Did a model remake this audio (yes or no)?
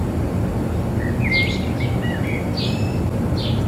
no